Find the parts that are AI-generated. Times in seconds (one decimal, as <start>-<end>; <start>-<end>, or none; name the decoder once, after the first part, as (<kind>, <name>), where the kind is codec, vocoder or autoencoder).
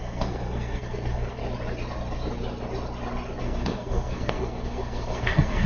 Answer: 0.0-1.4 (codec, SNAC); 3.4-5.7